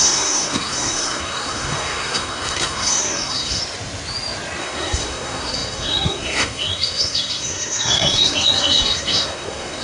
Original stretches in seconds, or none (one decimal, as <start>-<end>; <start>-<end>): 3.6-4.6